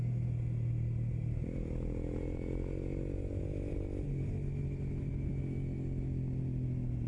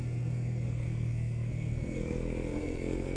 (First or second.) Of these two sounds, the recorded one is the first